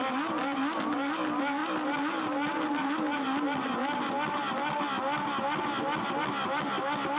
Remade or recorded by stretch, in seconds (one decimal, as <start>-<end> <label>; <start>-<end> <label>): 0.0-7.2 recorded